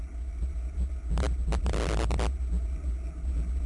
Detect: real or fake real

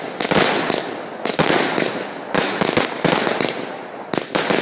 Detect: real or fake real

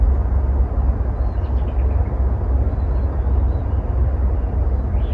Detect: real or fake real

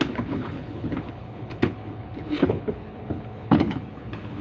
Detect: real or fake fake